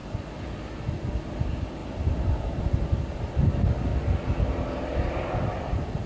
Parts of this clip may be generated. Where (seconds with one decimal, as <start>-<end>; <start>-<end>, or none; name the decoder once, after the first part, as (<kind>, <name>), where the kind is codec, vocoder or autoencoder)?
none